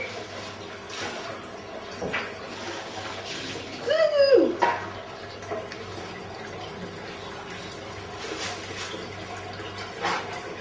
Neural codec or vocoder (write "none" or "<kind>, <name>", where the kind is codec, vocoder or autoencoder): none